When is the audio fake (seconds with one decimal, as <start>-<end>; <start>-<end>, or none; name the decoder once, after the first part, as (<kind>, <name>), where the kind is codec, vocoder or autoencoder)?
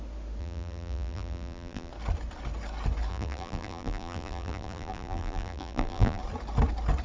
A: 0.4-1.9 (vocoder, BigVGAN v2); 3.1-6.2